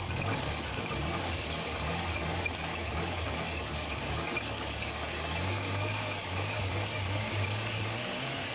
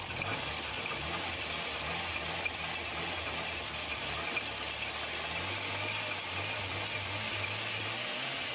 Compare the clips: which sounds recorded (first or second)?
second